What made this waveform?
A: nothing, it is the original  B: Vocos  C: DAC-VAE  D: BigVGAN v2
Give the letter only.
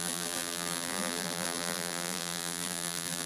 D